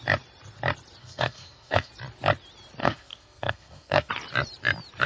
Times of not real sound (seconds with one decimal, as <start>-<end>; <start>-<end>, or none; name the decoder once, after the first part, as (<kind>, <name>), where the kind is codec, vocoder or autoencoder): 1.0-1.9 (codec, SNAC); 2.8-4.1